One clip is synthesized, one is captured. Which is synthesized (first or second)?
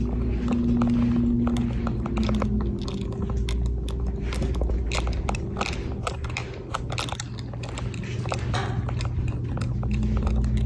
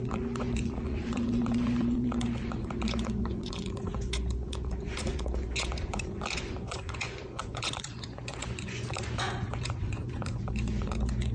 second